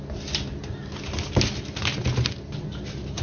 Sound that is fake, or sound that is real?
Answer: real